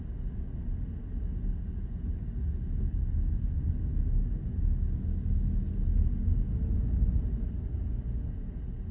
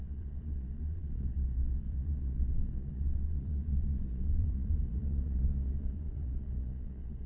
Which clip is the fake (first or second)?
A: second